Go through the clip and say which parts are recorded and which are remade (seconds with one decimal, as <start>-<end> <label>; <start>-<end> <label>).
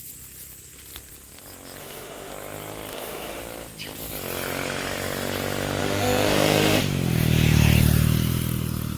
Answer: 0.0-1.8 recorded; 1.8-2.3 remade; 2.3-2.9 recorded; 2.9-3.4 remade; 3.4-5.8 recorded; 5.8-6.8 remade; 6.8-9.0 recorded